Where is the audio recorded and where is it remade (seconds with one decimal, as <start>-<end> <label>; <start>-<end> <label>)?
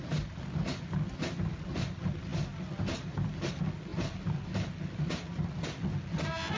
0.0-6.6 recorded